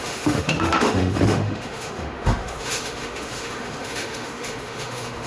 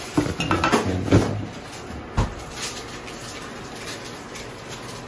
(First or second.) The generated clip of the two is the first